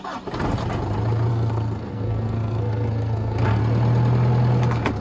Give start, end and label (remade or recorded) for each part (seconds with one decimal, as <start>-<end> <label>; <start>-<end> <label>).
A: 0.0-1.3 recorded; 1.3-3.6 remade; 3.6-5.0 recorded